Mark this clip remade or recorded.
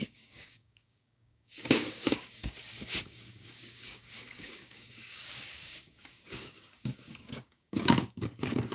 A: remade